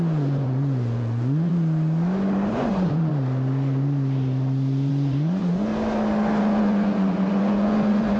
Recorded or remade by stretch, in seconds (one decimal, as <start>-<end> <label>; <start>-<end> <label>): 0.0-1.5 remade; 1.5-2.5 recorded; 2.5-3.1 remade; 3.1-4.9 recorded; 4.9-5.7 remade; 5.7-6.4 recorded; 6.4-8.2 remade